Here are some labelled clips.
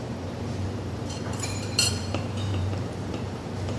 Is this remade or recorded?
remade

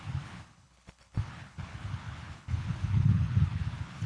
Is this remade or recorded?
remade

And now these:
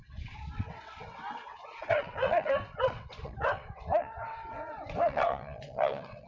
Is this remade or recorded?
remade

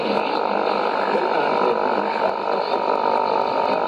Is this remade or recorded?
recorded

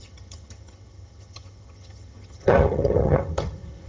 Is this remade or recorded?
remade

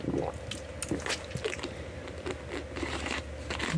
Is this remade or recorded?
recorded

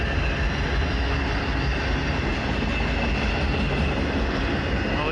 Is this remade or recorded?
recorded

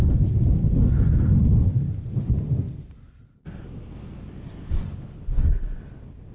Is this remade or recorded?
recorded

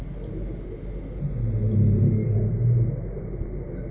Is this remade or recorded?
recorded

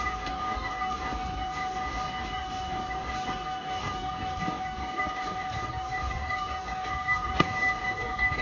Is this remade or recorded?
remade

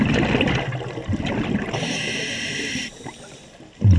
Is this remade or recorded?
recorded